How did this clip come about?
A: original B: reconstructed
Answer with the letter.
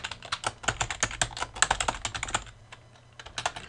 A